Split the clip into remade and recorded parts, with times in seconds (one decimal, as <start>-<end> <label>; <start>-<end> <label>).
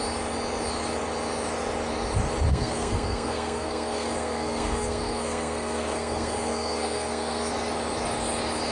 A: 0.0-2.5 recorded; 2.5-7.5 remade; 7.5-8.7 recorded